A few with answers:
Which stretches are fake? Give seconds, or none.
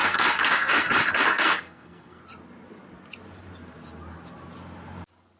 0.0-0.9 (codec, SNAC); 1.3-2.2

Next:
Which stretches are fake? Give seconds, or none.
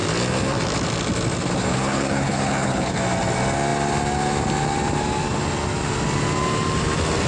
1.7-3.0 (codec, HILCodec)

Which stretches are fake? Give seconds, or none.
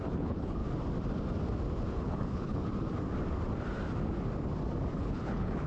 0.0-0.6 (codec, HILCodec); 1.9-2.7; 4.9-5.7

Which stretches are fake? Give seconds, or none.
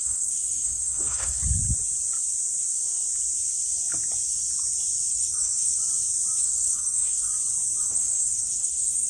0.0-1.4 (codec, SNAC); 5.1-5.8; 6.4-7.3; 7.8-9.1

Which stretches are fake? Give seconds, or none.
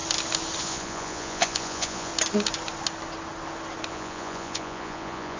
0.6-2.1 (vocoder, Vocos); 3.9-5.4